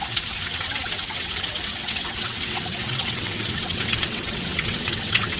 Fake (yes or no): yes